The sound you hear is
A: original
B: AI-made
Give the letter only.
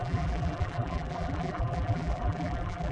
B